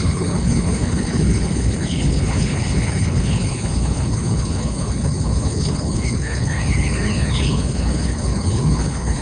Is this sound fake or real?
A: fake